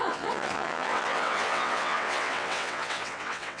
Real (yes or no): no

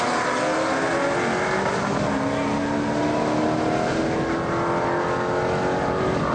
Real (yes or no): yes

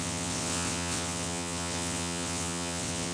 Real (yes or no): no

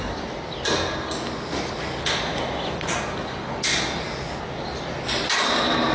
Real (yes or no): yes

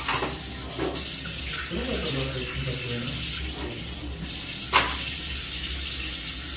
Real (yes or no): yes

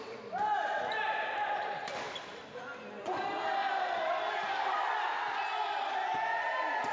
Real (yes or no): yes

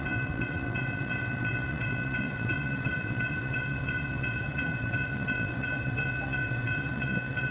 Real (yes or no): no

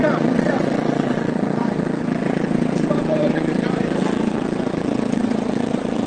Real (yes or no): no